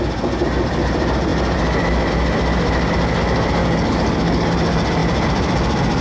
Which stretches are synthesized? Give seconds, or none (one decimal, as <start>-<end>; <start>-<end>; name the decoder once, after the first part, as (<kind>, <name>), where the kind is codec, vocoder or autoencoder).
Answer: 3.6-4.5 (codec, DAC)